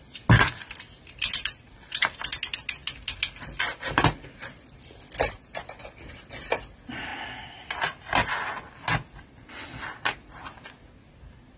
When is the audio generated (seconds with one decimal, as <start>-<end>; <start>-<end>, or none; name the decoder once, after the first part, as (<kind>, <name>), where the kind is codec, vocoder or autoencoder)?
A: none